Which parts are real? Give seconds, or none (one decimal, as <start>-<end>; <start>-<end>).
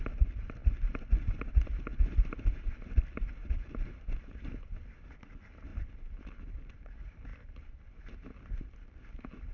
0.0-0.6; 5.2-5.7; 6.3-7.3; 8.0-9.5